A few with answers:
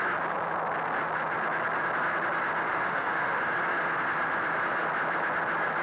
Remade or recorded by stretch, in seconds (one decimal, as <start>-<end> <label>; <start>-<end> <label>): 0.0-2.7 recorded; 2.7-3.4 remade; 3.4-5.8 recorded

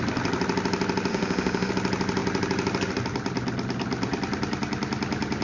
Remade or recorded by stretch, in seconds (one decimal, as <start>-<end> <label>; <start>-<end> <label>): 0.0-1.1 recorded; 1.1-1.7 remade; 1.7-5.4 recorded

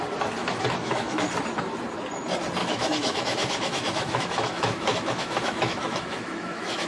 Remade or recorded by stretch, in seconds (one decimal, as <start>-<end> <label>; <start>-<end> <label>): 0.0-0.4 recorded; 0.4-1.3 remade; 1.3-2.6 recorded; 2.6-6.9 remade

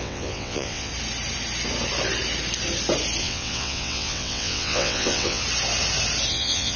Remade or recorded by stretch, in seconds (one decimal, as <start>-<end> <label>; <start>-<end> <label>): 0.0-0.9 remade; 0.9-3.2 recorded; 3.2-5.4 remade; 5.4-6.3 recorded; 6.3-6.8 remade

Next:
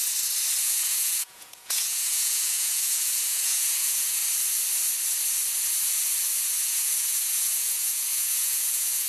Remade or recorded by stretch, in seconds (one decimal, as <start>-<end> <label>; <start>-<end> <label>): 0.0-0.6 recorded; 0.6-4.2 remade; 4.2-6.6 recorded; 6.6-9.1 remade